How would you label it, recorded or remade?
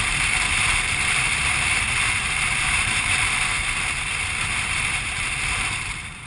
remade